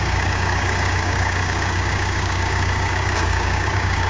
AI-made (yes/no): yes